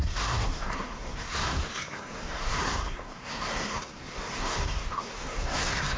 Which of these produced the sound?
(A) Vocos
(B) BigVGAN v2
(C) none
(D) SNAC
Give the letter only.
D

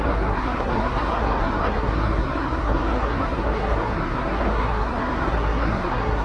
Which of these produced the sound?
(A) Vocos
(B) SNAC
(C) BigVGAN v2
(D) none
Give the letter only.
B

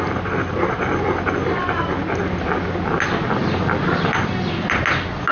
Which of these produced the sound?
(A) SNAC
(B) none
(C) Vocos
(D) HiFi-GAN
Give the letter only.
B